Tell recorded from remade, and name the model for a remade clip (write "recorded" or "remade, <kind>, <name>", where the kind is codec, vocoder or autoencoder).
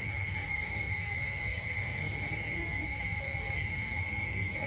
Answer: remade, codec, SNAC